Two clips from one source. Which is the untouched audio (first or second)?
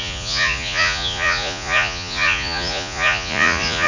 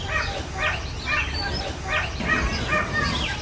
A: second